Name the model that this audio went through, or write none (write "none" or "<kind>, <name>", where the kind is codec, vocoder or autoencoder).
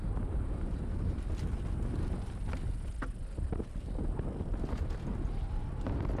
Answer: none